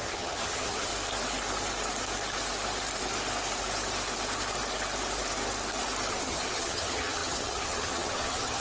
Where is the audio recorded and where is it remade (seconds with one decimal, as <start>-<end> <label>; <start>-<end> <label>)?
0.0-0.9 remade; 0.9-6.1 recorded; 6.1-8.6 remade